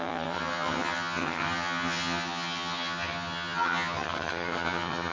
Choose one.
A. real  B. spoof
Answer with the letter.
B